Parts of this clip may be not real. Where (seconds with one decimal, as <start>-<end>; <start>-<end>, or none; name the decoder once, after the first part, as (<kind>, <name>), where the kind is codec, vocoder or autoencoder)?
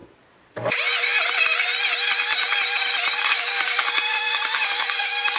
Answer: 3.2-5.4 (codec, DAC)